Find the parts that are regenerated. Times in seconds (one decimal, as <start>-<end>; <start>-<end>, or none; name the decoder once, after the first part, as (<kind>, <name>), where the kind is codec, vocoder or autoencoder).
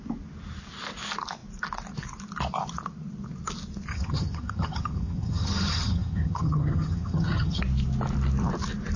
3.9-7.6 (vocoder, HiFi-GAN)